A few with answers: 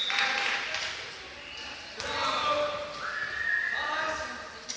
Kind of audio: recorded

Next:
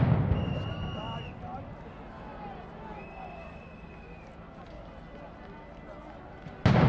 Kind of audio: recorded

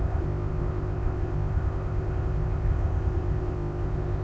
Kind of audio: remade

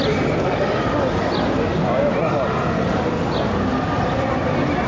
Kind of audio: recorded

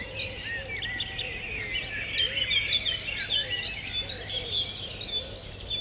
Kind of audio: recorded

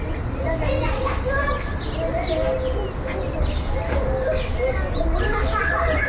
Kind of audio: recorded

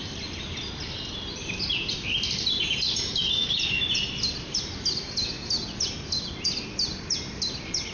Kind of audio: recorded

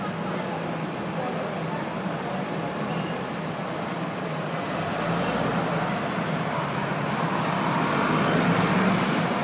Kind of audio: recorded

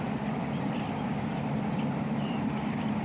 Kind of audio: recorded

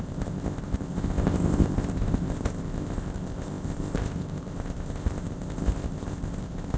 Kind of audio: remade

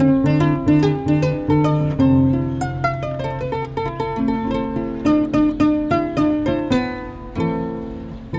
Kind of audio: recorded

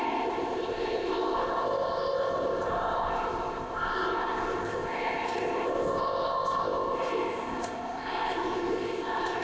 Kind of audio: remade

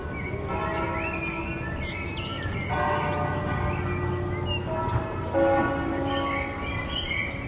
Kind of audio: recorded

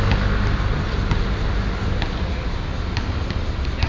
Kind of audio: recorded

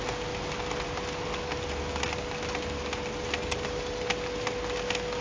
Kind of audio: recorded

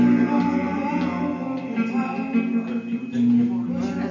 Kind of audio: recorded